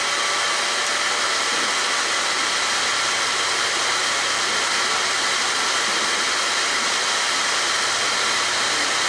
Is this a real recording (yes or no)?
yes